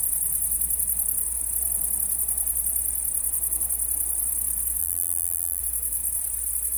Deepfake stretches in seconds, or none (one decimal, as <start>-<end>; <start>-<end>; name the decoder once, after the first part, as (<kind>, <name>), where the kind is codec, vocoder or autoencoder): 4.8-5.6 (vocoder, BigVGAN v2)